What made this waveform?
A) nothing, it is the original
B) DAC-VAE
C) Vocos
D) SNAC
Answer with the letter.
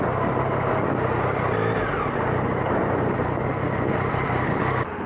A